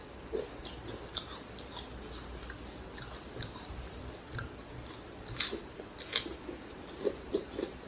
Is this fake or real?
real